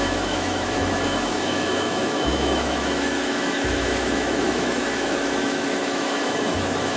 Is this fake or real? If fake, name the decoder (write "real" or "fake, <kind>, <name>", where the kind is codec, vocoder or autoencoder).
fake, autoencoder, DAC-VAE